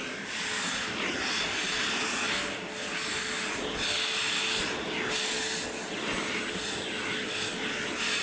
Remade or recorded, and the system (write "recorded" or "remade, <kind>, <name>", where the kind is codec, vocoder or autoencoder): recorded